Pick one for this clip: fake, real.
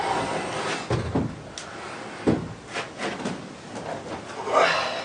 real